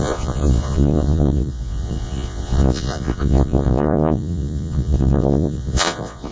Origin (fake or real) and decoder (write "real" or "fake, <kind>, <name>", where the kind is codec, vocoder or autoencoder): fake, vocoder, Vocos